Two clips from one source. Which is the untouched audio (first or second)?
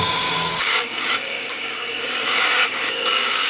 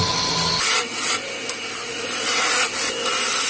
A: second